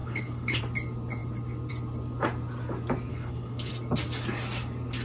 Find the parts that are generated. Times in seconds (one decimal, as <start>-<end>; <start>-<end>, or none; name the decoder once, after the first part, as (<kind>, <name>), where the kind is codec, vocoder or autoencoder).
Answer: 0.0-0.6 (codec, HILCodec); 3.1-3.7